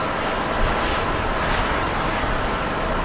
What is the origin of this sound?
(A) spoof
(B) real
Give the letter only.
B